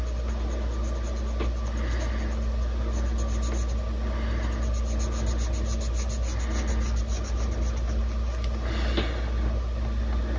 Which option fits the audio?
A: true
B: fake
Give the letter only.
A